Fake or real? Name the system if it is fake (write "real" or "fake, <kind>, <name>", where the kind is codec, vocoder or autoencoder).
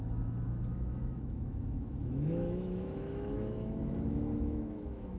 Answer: fake, autoencoder, DAC-VAE